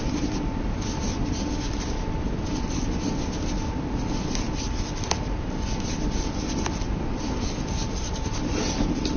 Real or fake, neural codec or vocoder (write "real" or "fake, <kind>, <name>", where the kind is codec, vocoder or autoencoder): real